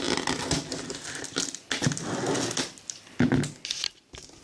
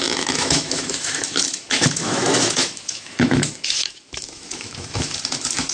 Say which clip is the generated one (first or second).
second